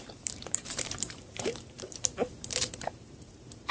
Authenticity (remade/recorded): remade